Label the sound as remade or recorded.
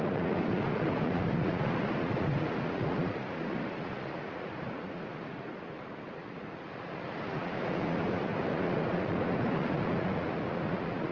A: remade